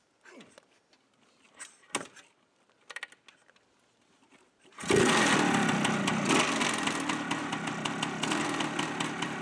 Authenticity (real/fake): real